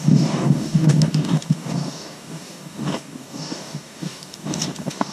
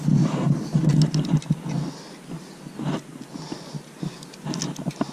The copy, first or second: first